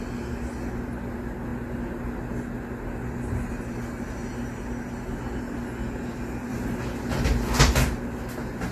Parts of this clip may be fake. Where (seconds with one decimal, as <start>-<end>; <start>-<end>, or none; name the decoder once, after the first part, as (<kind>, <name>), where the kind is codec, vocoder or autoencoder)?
none

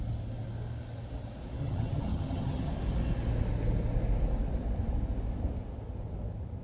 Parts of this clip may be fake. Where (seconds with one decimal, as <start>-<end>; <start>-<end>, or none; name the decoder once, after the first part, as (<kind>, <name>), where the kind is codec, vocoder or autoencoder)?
1.6-2.7 (vocoder, HiFi-GAN)

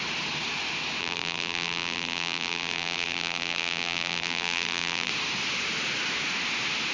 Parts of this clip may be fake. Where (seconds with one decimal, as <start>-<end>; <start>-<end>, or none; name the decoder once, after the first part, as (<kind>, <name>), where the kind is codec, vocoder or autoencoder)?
1.0-5.1 (vocoder, BigVGAN v2)

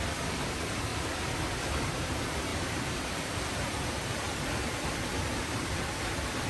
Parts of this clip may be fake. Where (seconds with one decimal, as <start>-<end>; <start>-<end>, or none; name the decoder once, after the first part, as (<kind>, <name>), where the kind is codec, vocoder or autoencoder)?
2.5-6.0 (vocoder, BigVGAN v2)